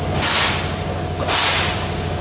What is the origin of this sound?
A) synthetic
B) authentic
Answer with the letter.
B